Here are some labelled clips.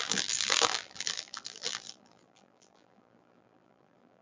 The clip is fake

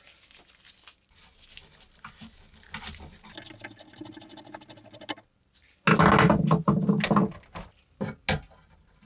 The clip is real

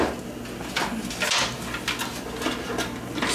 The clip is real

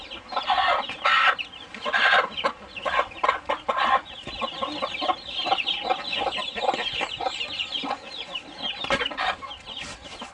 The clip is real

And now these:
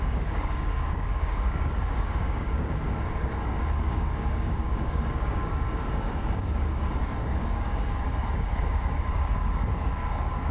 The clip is fake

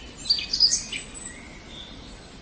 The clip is real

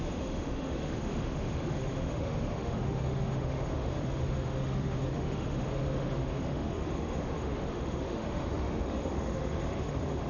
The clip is fake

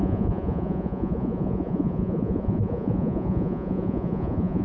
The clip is fake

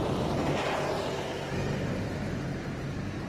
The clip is real